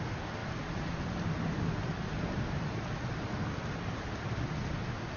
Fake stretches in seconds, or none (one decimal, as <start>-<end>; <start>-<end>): 0.4-1.3; 2.1-3.7